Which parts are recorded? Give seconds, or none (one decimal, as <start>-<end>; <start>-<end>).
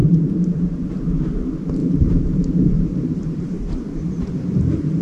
0.0-1.8